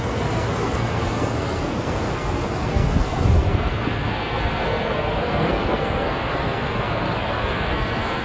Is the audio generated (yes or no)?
yes